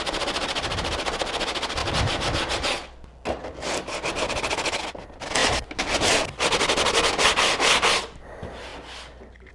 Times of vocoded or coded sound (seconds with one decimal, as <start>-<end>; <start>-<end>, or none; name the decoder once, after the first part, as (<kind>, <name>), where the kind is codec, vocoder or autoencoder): none